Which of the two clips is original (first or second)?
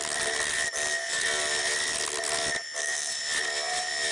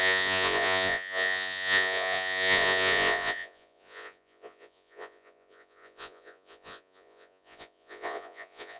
first